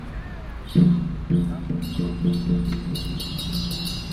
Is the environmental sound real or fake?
real